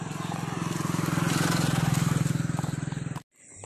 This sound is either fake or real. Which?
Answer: real